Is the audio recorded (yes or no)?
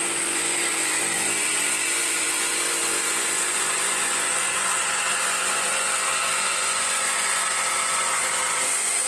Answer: no